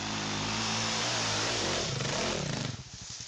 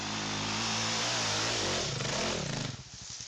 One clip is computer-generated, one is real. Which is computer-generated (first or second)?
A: first